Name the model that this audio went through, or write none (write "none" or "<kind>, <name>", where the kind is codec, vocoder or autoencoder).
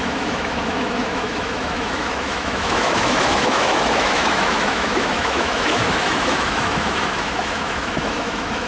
autoencoder, DAC-VAE